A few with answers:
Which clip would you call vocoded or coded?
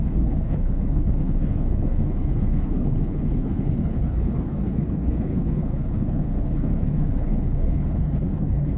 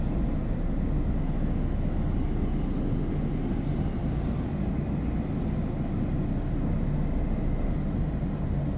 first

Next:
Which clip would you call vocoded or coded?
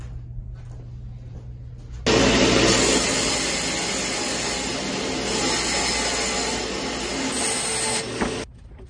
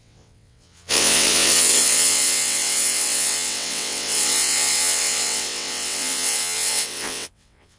second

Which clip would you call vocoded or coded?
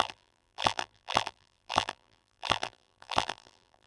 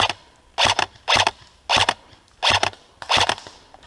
first